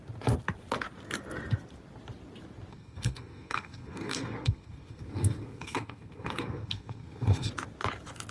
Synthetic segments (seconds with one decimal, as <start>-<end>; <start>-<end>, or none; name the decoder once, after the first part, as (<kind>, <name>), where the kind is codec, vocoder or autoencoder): 2.7-7.5 (codec, SNAC)